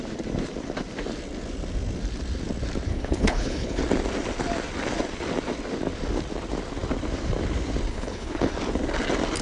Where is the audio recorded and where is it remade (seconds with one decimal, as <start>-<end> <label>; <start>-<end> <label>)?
0.0-2.9 recorded; 2.9-3.8 remade; 3.8-7.9 recorded; 7.9-8.5 remade; 8.5-9.4 recorded